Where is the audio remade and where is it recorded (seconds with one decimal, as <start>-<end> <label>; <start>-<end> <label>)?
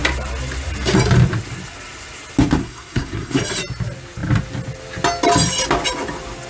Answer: 0.0-2.6 recorded; 2.6-3.4 remade; 3.4-6.5 recorded